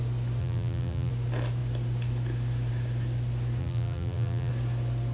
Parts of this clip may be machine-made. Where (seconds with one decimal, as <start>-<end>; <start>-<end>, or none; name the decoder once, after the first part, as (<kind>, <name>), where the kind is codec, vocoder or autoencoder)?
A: 0.4-1.1 (vocoder, BigVGAN v2); 3.6-4.5